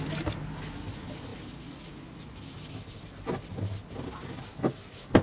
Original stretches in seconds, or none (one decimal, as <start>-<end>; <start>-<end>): 0.0-5.2